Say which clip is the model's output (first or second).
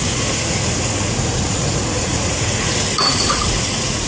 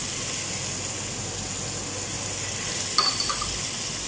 first